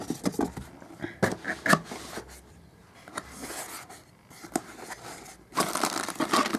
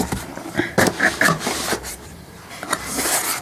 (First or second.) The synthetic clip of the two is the second